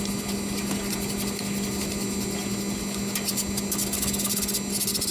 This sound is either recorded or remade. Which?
recorded